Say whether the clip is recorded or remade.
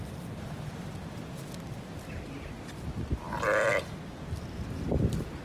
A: recorded